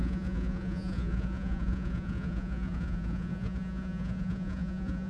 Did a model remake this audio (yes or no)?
yes